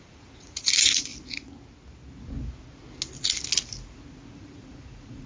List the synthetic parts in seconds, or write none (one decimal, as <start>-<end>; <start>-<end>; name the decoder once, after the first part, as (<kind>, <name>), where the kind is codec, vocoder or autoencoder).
0.0-1.1 (vocoder, Vocos); 4.3-5.3